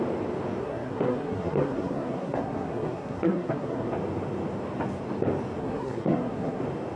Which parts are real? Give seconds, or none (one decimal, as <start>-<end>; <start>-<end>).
0.0-0.6; 3.9-5.6; 6.6-7.0